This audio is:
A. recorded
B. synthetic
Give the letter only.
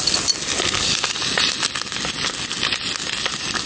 A